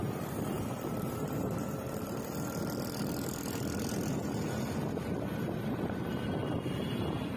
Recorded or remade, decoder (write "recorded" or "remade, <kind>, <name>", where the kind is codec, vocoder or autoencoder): recorded